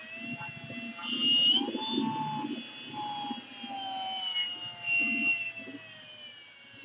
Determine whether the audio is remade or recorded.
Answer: recorded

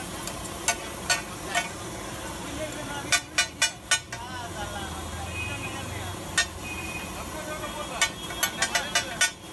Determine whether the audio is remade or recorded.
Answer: recorded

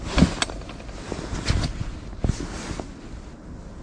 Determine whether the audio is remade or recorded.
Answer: recorded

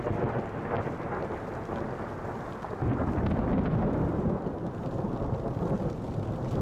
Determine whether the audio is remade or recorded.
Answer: recorded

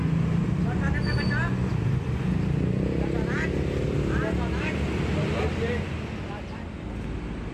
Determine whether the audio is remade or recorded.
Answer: recorded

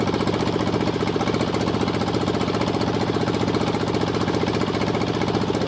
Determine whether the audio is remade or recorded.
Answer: recorded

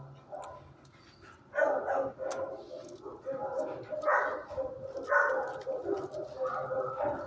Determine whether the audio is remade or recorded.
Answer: recorded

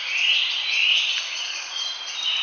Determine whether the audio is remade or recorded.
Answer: recorded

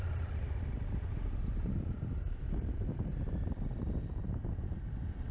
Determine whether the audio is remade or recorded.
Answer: remade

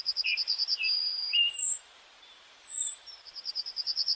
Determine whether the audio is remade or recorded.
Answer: remade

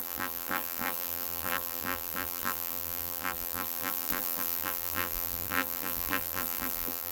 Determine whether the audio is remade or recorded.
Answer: remade